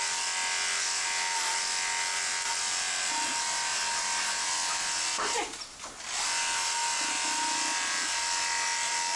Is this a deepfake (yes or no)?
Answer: no